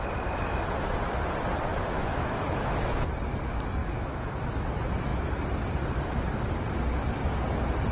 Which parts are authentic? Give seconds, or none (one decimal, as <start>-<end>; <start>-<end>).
0.0-1.7; 3.0-3.8; 4.5-7.9